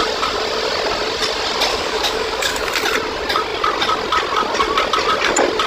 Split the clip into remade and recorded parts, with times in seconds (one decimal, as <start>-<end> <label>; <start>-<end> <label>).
0.0-1.7 recorded; 1.7-2.7 remade; 2.7-5.7 recorded